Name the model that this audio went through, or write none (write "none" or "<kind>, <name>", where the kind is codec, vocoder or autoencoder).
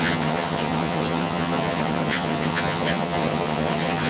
vocoder, HiFi-GAN